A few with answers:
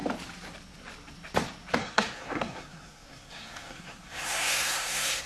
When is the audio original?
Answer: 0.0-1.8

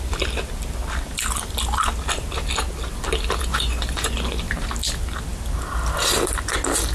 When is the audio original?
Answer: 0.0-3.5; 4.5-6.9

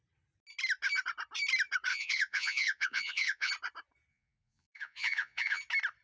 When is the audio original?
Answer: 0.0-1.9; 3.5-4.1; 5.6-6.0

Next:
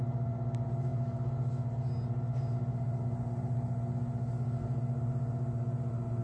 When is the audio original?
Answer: 0.0-6.2

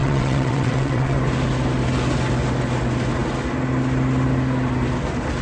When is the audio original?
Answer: 1.2-5.4

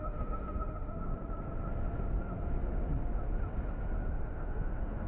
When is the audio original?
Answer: 1.1-4.2